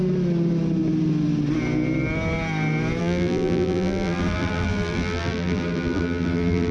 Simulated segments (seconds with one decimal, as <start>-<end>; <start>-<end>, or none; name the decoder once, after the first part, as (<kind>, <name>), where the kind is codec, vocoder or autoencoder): 3.0-6.7 (vocoder, BigVGAN v2)